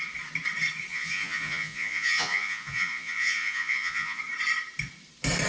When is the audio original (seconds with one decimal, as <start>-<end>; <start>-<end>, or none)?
0.0-0.9; 4.2-5.5